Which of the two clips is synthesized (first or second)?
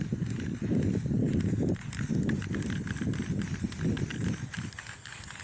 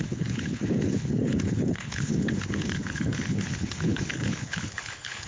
second